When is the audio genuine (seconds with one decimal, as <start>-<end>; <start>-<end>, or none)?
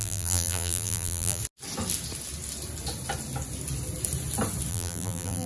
1.4-4.7